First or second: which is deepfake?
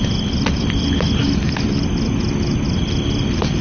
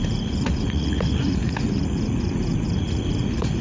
second